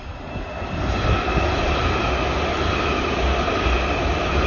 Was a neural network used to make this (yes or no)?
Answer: no